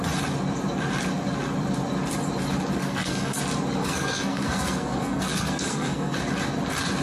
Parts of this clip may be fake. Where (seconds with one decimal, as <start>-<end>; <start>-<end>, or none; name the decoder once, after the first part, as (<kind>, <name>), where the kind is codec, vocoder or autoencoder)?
2.8-3.4 (codec, SNAC); 3.8-6.2